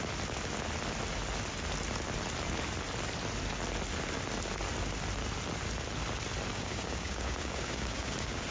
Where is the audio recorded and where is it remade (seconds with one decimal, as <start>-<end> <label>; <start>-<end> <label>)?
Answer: 0.0-6.5 recorded; 6.5-8.5 remade